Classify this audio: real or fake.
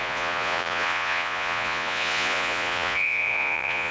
fake